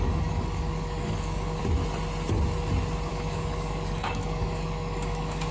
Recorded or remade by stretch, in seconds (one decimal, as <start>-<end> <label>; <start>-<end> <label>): 0.0-1.6 remade; 1.6-3.1 recorded; 3.1-5.5 remade